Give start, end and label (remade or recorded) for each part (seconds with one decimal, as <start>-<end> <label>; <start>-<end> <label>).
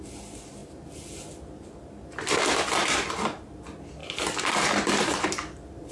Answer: 0.0-4.0 recorded; 4.0-5.9 remade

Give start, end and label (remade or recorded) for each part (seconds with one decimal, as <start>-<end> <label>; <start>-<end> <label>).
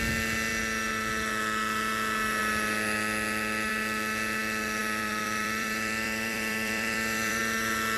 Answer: 0.0-4.8 recorded; 4.8-7.4 remade; 7.4-8.0 recorded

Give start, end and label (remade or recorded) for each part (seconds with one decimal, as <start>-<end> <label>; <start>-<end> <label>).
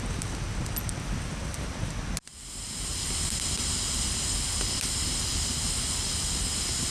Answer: 0.0-6.9 recorded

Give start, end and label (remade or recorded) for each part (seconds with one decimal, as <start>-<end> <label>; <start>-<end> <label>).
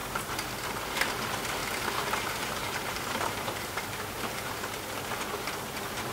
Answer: 0.0-1.6 recorded; 1.6-4.6 remade; 4.6-6.1 recorded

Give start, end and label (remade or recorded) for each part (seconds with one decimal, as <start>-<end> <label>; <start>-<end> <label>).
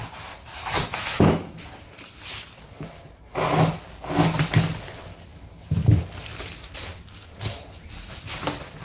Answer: 0.0-0.5 recorded; 0.5-1.9 remade; 1.9-5.3 recorded; 5.3-6.0 remade; 6.0-8.8 recorded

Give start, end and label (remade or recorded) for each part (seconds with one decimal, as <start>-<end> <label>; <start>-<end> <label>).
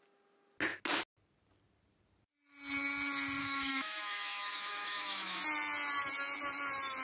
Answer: 0.0-3.4 recorded; 3.4-5.4 remade; 5.4-7.0 recorded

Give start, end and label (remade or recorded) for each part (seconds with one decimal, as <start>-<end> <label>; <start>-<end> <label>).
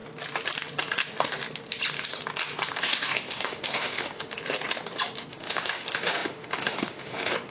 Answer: 0.0-2.8 recorded; 2.8-4.4 remade; 4.4-5.3 recorded; 5.3-7.5 remade